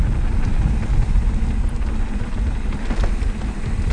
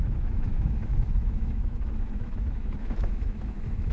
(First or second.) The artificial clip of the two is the second